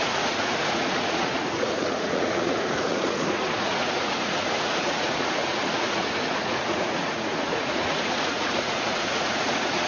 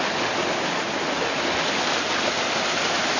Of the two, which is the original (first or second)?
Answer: second